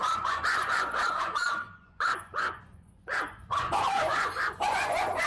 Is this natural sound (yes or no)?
no